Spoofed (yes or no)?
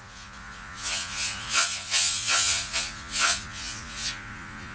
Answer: yes